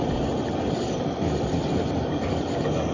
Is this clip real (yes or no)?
yes